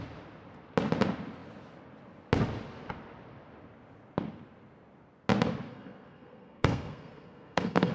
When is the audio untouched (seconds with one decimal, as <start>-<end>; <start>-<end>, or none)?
0.0-5.7